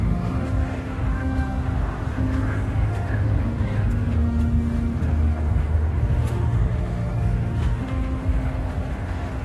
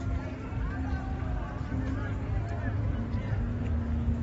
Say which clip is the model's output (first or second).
first